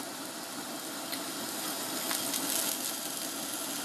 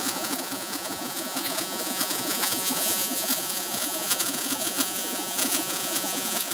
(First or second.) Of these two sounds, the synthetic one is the second